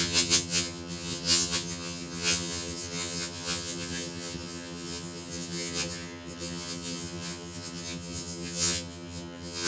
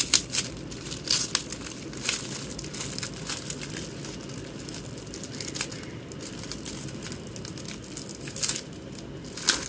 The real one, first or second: second